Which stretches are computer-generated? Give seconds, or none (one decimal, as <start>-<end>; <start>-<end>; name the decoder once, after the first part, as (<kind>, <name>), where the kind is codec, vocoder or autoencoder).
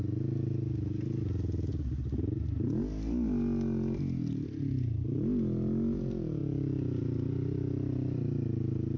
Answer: none